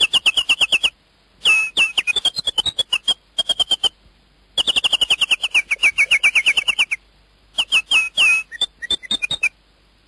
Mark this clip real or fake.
real